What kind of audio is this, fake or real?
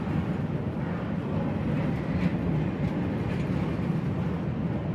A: real